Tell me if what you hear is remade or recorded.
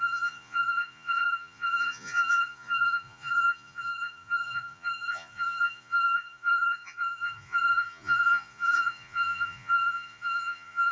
remade